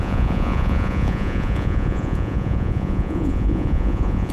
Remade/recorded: remade